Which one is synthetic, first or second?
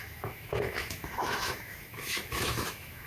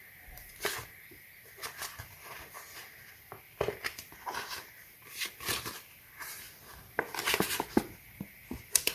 first